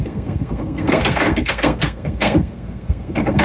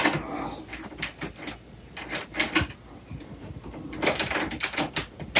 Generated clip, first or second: first